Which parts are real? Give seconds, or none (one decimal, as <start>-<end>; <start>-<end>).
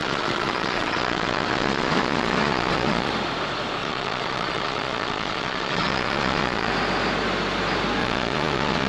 3.1-3.8; 6.7-8.0